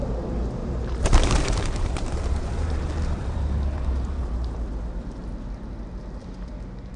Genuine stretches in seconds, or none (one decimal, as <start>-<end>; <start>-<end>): 0.0-0.6; 4.8-7.0